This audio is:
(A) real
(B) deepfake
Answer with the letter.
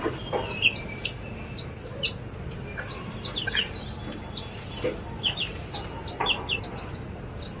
A